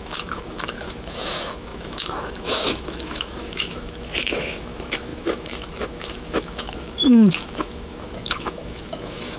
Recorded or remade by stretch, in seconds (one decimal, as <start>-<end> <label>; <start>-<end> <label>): 0.0-9.4 remade